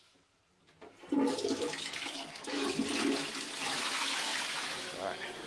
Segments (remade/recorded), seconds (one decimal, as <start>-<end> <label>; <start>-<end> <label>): 0.0-0.4 remade; 0.4-1.3 recorded; 1.3-2.8 remade; 2.8-3.6 recorded; 3.6-5.5 remade